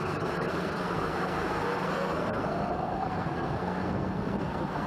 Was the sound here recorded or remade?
remade